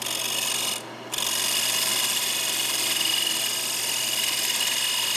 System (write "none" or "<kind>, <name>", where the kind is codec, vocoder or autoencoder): none